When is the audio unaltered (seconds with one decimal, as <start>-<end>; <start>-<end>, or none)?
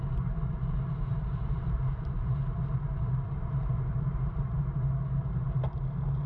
0.0-1.1; 4.9-6.3